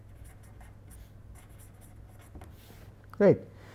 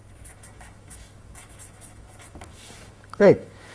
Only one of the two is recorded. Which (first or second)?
first